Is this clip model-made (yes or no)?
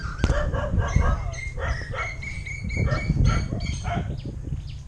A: no